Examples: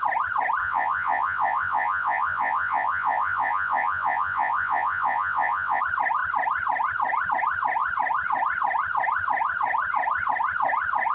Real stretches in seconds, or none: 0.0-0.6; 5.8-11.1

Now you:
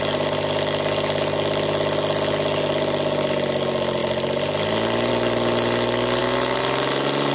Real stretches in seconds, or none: 0.0-7.3